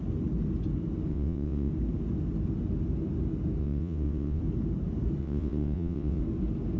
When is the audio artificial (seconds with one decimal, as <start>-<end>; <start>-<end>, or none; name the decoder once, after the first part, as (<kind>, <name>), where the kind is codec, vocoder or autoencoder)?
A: 1.1-1.7 (vocoder, WaveNeXt); 3.6-4.4; 5.2-6.2